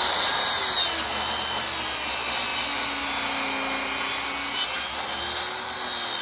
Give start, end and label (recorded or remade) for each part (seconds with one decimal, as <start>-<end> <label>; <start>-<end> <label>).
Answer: 0.0-6.2 recorded